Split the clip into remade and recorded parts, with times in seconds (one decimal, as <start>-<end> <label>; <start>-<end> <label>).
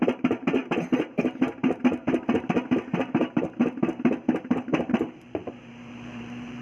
0.0-0.6 remade; 0.6-4.4 recorded; 4.4-6.6 remade